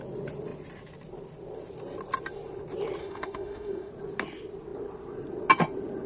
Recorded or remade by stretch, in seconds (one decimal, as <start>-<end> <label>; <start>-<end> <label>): 0.0-3.0 recorded; 3.0-3.9 remade; 3.9-6.1 recorded

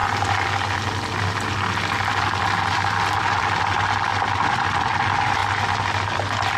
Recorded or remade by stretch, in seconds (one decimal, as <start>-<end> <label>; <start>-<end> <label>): 0.0-6.6 recorded

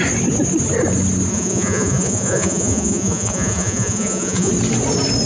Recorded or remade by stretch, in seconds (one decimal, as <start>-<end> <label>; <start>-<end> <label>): 0.0-1.3 recorded; 1.3-4.5 remade; 4.5-5.3 recorded

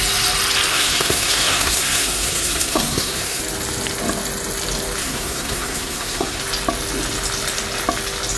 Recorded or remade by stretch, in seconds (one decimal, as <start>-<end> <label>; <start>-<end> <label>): 0.0-0.7 recorded; 0.7-3.4 remade; 3.4-5.0 recorded; 5.0-6.4 remade; 6.4-8.4 recorded